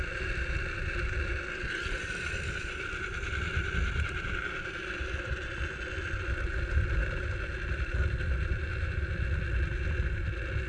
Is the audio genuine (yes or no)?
yes